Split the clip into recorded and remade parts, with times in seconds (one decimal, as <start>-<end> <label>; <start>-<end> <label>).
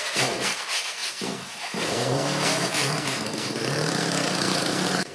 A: 0.0-5.1 remade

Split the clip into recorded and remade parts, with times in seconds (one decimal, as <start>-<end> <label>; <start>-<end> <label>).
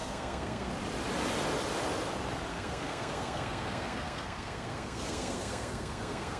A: 0.0-0.7 remade; 0.7-2.5 recorded; 2.5-6.4 remade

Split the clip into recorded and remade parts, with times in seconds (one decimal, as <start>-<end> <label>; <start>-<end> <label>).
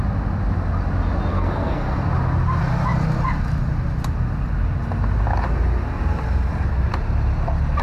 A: 0.0-1.3 recorded; 1.3-2.0 remade; 2.0-7.8 recorded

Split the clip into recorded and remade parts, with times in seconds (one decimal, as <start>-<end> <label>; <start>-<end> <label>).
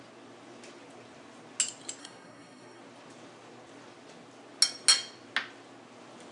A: 0.0-2.0 recorded; 2.0-2.8 remade; 2.8-6.3 recorded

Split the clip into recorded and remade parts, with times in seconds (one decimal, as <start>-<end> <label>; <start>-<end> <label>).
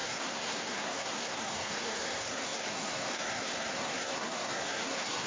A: 0.0-5.3 remade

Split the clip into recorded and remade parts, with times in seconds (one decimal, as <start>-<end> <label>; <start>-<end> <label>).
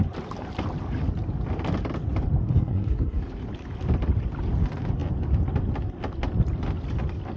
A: 0.0-2.4 recorded; 2.4-3.2 remade; 3.2-7.4 recorded